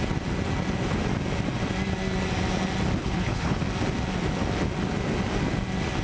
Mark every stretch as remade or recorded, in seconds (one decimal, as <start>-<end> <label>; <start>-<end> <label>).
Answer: 0.0-3.0 recorded; 3.0-3.6 remade; 3.6-6.0 recorded